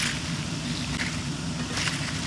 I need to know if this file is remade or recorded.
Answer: recorded